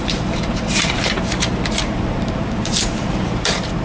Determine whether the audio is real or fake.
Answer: fake